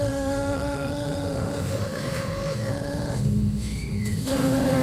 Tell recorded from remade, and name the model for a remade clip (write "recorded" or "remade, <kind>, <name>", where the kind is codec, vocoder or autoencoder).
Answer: remade, autoencoder, DAC-VAE